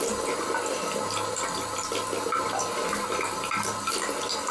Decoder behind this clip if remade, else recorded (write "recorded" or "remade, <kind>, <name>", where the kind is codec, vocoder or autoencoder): recorded